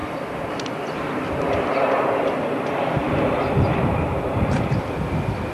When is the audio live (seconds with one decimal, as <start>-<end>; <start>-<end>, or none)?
0.0-3.7; 4.8-5.5